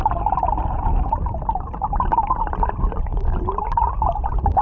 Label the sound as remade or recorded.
recorded